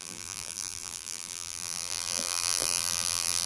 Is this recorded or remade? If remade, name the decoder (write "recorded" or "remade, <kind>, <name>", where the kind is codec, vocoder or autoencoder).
remade, vocoder, BigVGAN v2